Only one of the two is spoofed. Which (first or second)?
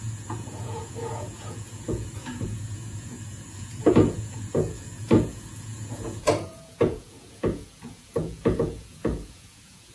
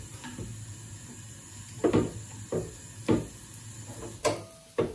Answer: first